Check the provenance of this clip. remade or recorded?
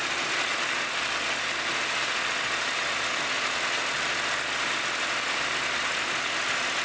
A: recorded